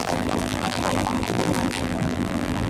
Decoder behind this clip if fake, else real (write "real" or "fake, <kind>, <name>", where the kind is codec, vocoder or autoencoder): fake, vocoder, BigVGAN v2